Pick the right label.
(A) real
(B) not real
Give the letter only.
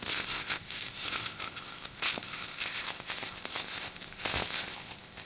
B